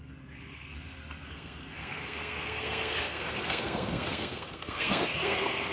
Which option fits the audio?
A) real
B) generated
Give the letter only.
B